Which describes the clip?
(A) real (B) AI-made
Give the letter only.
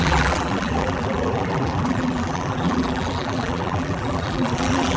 B